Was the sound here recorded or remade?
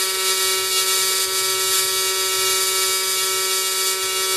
recorded